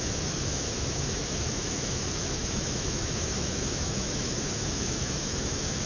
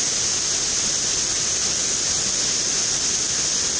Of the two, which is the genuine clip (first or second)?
second